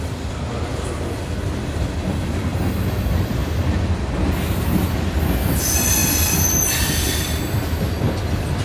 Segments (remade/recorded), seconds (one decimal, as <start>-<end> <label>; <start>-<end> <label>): 0.0-8.6 recorded